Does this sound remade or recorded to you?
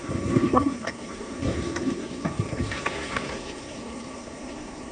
remade